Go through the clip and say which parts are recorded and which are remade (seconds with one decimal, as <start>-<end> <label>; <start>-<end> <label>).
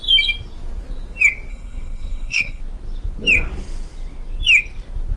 0.0-1.5 recorded; 1.5-2.6 remade; 2.6-5.2 recorded